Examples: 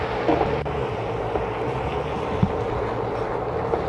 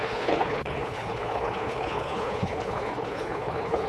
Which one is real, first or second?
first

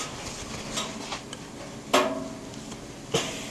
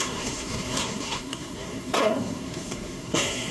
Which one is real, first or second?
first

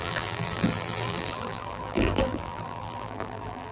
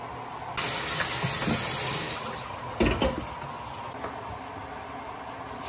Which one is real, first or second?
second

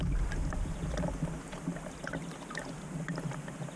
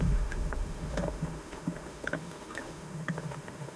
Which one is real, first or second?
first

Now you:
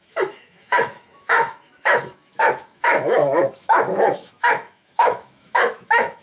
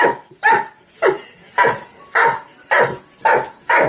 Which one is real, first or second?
second